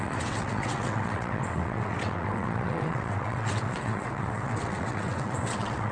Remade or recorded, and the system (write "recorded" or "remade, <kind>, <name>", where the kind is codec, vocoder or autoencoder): remade, vocoder, WaveNeXt